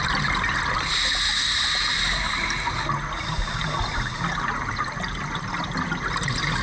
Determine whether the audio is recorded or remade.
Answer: recorded